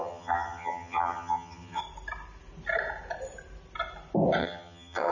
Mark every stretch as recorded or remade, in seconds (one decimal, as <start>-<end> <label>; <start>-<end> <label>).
0.0-1.8 remade; 1.8-4.4 recorded; 4.4-5.1 remade